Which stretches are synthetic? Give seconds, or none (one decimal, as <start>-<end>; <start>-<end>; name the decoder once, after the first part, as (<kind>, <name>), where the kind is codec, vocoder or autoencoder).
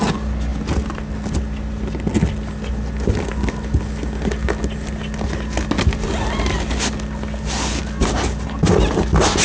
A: none